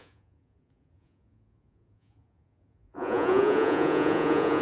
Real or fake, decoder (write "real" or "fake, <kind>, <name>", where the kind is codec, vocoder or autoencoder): fake, vocoder, Vocos